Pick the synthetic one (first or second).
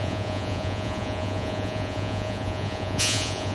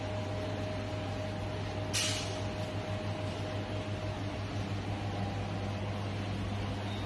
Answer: first